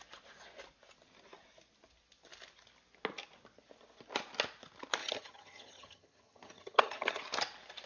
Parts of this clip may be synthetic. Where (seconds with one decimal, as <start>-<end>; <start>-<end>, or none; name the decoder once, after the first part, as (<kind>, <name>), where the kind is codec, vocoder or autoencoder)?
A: 5.0-7.2 (vocoder, HiFi-GAN)